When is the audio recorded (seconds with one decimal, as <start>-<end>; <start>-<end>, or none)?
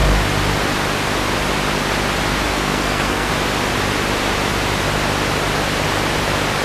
0.0-2.5; 3.3-6.6